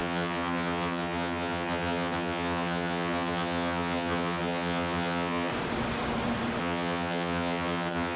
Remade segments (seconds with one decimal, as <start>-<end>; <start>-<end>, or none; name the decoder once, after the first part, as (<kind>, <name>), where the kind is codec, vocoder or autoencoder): 0.0-5.5 (vocoder, HiFi-GAN); 6.6-8.2